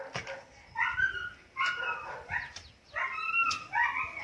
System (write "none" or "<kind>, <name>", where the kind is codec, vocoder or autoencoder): none